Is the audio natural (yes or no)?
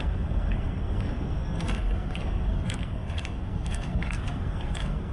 no